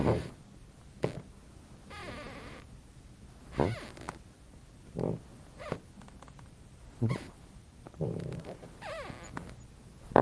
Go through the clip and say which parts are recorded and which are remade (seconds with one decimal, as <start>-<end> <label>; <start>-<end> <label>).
0.0-0.7 remade; 0.7-5.3 recorded; 5.3-8.9 remade; 8.9-10.2 recorded